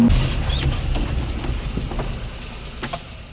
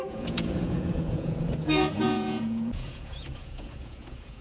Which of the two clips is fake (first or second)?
second